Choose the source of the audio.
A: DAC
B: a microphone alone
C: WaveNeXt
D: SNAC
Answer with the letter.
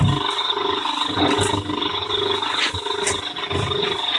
B